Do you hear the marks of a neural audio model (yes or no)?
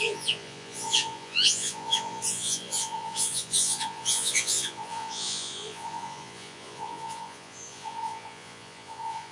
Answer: yes